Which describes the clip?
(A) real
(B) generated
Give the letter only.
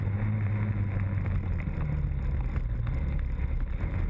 A